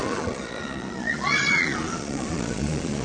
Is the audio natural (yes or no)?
no